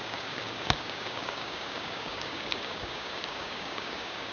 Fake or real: fake